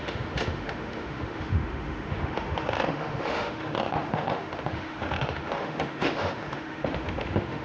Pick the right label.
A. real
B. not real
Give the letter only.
B